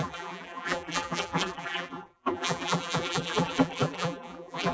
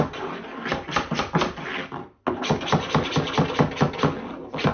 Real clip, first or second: second